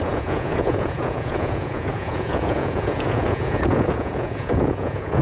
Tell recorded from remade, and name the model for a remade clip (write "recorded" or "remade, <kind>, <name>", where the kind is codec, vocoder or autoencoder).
remade, vocoder, Vocos